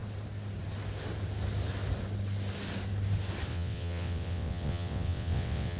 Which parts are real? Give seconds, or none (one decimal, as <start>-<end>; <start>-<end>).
0.0-3.5